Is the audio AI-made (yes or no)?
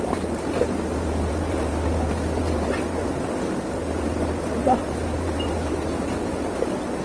no